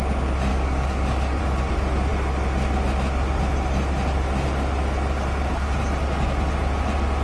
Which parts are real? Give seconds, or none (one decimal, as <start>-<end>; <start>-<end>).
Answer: 0.0-0.5; 1.4-7.2